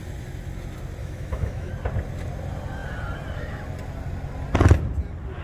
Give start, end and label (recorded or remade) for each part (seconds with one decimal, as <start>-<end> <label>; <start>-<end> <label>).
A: 0.0-1.0 recorded; 1.0-1.7 remade; 1.7-5.4 recorded